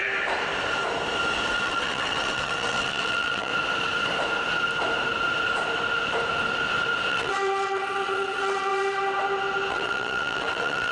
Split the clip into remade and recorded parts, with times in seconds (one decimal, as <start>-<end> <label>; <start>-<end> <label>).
0.0-1.5 recorded; 1.5-3.5 remade; 3.5-7.1 recorded; 7.1-8.7 remade; 8.7-9.7 recorded; 9.7-10.9 remade